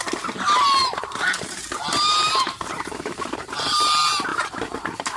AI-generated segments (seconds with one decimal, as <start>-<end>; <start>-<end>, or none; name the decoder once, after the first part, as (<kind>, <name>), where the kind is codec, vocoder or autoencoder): 0.8-3.9 (vocoder, BigVGAN v2); 4.3-5.2